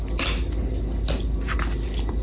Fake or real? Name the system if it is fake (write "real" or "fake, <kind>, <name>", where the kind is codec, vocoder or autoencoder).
real